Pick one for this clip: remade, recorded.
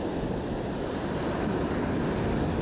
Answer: recorded